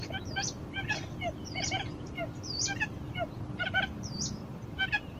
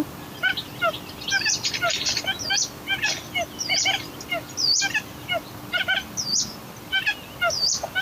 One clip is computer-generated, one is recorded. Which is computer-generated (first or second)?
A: first